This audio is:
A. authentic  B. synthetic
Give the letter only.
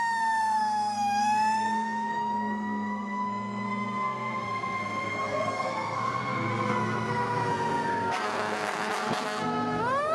B